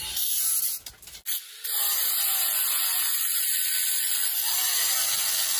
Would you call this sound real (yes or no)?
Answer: yes